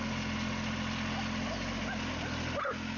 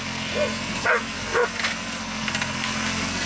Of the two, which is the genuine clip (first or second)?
first